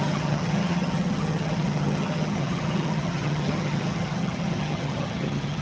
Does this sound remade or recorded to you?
remade